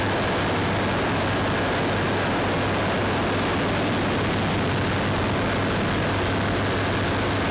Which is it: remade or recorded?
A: recorded